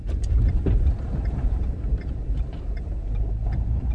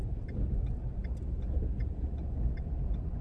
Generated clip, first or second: first